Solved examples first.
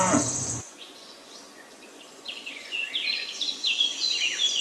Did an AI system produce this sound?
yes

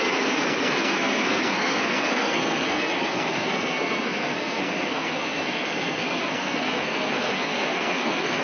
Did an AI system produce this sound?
yes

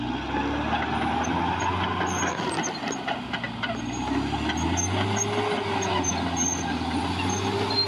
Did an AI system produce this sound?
no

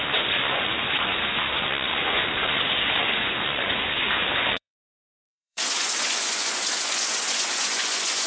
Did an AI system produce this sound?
yes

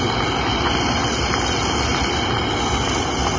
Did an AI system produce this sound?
no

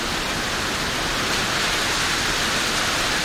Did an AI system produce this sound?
no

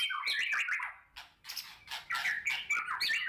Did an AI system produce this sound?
no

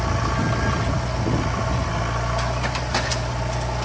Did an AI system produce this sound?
no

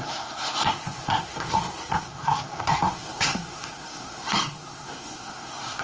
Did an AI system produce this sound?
yes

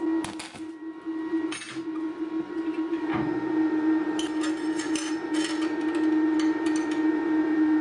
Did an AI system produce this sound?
no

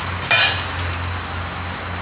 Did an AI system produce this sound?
no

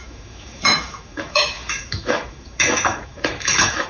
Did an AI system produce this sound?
yes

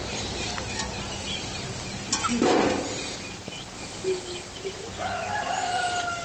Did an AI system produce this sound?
no